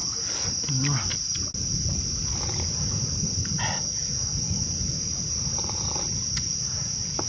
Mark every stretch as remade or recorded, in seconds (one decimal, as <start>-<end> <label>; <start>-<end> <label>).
0.0-7.3 recorded